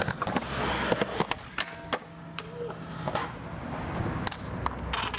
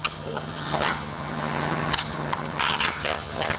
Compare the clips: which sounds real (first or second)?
first